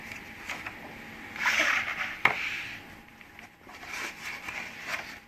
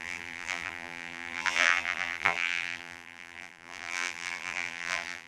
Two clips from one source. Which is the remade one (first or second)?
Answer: second